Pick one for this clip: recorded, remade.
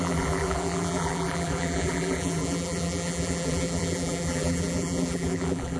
remade